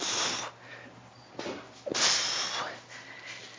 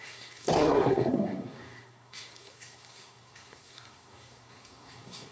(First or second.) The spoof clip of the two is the second